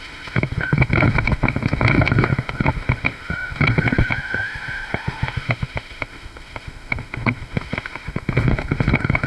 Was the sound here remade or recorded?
remade